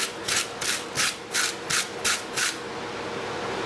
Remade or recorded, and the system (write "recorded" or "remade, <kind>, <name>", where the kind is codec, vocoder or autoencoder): recorded